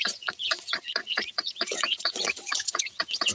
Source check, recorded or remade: remade